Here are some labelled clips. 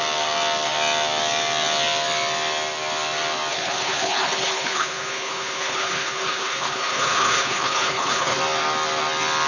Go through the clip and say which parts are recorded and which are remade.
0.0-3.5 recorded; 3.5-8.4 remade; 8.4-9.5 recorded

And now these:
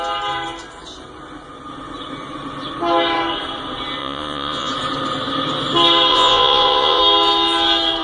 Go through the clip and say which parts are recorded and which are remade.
0.0-4.0 recorded; 4.0-4.7 remade; 4.7-6.1 recorded; 6.1-7.0 remade; 7.0-8.0 recorded

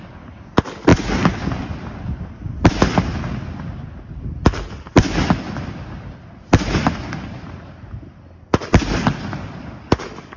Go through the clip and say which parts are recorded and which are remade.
0.0-10.4 recorded

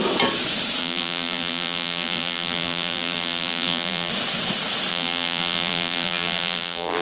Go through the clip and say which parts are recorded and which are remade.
0.0-0.8 recorded; 0.8-4.1 remade; 4.1-4.9 recorded; 4.9-7.0 remade

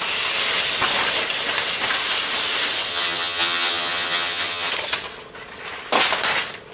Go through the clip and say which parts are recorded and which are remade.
0.0-2.9 recorded; 2.9-4.7 remade; 4.7-6.7 recorded